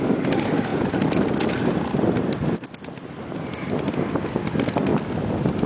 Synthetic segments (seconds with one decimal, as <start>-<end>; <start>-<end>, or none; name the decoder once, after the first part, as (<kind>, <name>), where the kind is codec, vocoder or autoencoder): none